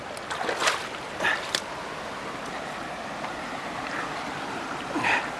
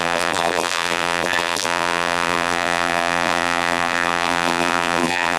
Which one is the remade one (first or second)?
second